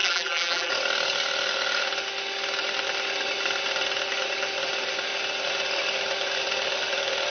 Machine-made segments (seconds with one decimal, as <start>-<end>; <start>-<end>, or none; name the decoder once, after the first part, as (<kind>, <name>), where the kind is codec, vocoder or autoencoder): 0.0-0.7 (vocoder, BigVGAN v2)